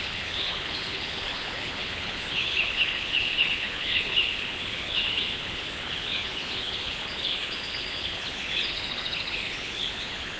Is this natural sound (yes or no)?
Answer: no